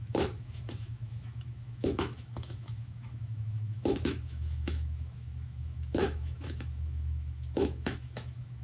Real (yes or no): no